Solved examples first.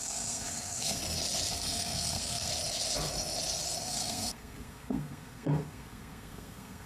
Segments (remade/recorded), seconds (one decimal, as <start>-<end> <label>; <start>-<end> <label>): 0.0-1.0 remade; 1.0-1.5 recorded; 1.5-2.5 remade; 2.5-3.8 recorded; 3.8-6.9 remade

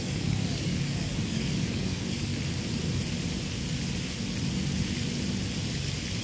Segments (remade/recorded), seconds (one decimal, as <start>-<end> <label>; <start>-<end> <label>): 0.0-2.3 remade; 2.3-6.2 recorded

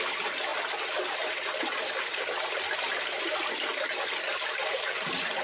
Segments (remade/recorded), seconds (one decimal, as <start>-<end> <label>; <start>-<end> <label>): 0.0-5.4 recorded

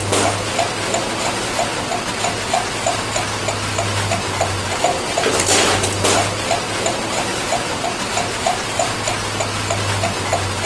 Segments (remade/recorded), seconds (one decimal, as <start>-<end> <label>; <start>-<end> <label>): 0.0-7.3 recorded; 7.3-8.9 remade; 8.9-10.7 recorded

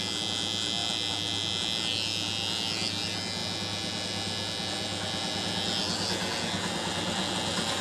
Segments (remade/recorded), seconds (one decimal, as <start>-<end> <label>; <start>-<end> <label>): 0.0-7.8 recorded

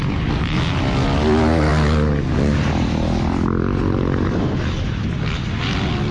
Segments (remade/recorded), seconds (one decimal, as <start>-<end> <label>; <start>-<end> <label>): 0.0-6.1 recorded

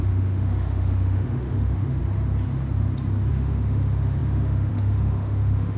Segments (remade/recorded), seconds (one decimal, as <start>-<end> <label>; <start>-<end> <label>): 0.0-2.0 remade; 2.0-3.3 recorded; 3.3-5.8 remade

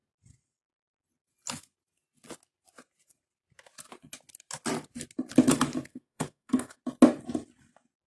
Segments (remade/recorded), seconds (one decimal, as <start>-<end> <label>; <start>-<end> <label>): 0.0-5.9 recorded; 5.9-6.8 remade; 6.8-8.1 recorded